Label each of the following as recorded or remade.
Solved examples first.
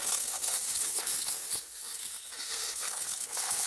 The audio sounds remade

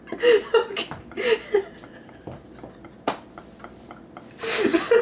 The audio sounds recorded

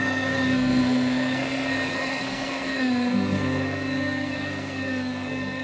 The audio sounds remade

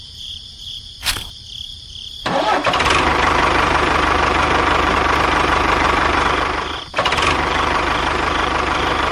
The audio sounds remade